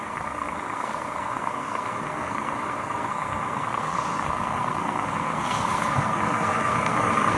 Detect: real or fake fake